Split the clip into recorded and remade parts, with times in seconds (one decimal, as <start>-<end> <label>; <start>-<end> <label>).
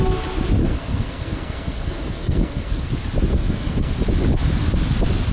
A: 0.0-0.6 recorded; 0.6-2.9 remade; 2.9-3.3 recorded; 3.3-3.9 remade; 3.9-5.3 recorded